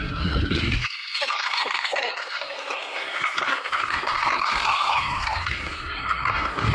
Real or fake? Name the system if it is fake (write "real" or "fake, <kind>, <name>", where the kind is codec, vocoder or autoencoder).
fake, codec, SNAC